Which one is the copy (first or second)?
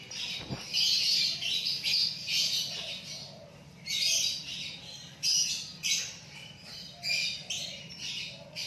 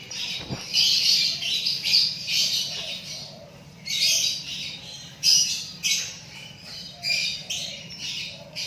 second